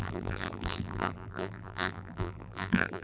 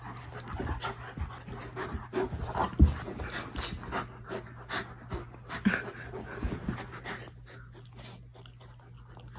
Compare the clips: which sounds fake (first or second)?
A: first